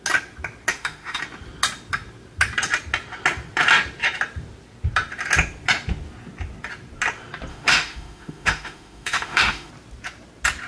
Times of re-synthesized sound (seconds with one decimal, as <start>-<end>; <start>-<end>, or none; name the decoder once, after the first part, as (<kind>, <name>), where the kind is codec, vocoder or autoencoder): 0.7-1.2 (autoencoder, DAC-VAE); 7.5-9.7